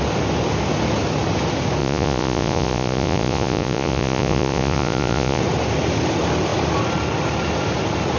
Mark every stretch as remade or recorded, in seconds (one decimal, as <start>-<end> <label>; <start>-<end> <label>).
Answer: 0.0-1.8 recorded; 1.8-5.4 remade; 5.4-8.2 recorded